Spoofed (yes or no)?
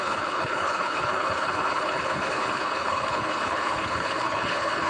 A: yes